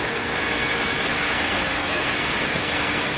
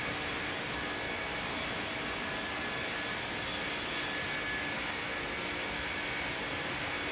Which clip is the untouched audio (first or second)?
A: second